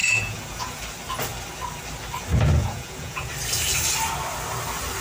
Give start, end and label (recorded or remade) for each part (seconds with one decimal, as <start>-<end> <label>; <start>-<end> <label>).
0.0-0.8 remade; 0.8-2.6 recorded; 2.6-3.3 remade; 3.3-5.0 recorded